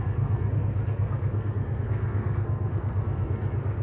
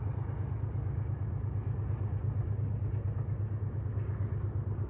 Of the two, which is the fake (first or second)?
first